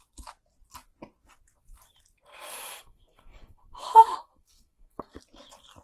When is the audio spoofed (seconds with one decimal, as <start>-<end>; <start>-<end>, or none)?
2.3-5.2